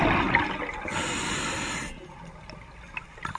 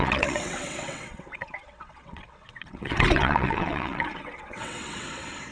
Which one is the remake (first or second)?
second